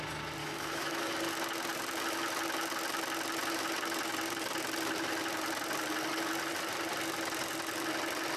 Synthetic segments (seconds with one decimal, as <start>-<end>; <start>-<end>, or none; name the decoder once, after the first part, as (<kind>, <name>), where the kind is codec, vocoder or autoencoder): 0.4-1.1 (autoencoder, DAC-VAE)